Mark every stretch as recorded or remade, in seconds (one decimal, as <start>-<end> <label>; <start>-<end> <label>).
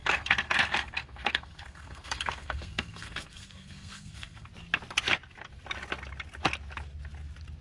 0.0-4.5 remade; 4.5-7.6 recorded